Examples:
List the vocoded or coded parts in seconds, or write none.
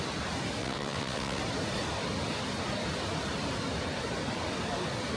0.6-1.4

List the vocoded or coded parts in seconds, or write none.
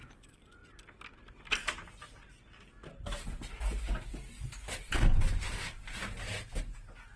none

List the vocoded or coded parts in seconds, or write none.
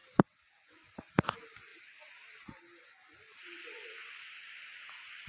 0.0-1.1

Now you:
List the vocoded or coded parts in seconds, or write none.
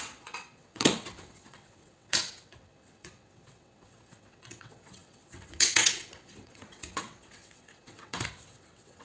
0.0-9.0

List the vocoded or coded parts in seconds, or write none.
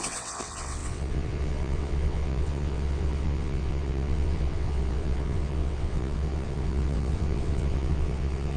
0.0-8.6